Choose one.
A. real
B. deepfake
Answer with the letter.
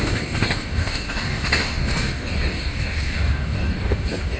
B